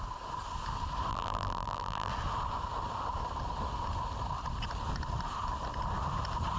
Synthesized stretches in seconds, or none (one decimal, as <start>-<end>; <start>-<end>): 1.1-2.1